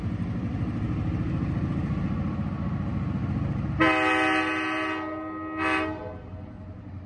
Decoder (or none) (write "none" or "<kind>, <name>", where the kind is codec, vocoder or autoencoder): none